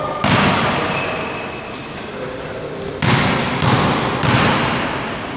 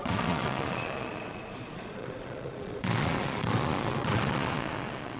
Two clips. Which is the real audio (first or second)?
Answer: first